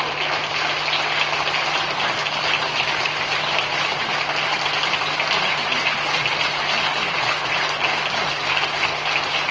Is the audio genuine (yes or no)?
yes